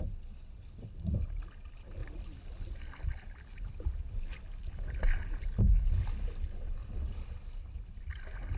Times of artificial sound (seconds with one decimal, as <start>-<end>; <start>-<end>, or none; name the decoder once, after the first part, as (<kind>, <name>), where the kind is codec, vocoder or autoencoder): none